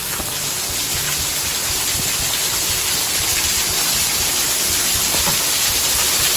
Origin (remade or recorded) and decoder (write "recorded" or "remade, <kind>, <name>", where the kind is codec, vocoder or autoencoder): recorded